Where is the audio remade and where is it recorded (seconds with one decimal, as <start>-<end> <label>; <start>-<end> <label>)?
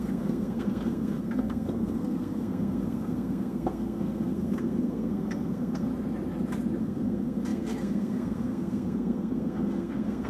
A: 0.0-5.9 remade; 5.9-6.8 recorded; 6.8-10.3 remade